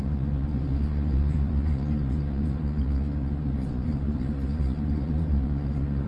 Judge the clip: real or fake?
fake